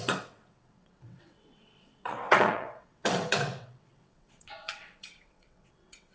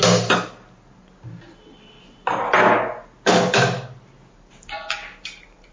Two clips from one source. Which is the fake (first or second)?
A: first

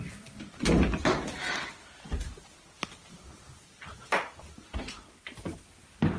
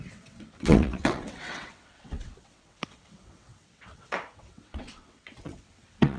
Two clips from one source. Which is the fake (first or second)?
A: second